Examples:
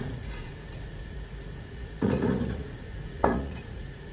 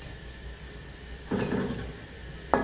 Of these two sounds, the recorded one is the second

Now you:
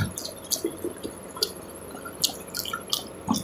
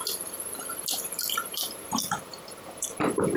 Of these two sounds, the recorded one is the first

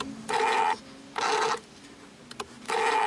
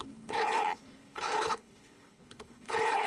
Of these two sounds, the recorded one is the first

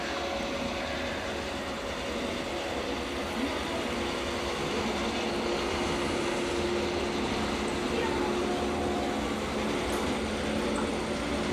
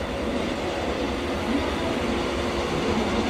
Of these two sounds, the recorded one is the first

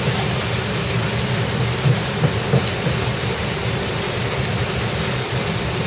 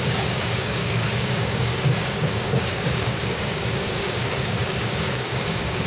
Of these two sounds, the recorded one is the first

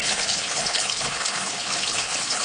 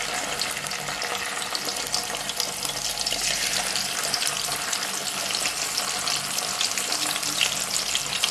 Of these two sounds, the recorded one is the second